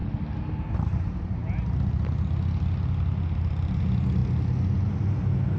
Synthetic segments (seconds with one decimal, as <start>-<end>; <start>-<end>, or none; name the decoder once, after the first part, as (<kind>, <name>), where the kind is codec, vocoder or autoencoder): none

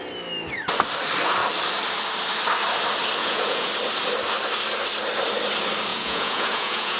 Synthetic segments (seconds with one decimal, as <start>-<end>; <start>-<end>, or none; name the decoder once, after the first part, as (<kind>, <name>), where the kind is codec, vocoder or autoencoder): 3.2-3.7 (vocoder, Vocos); 5.9-7.0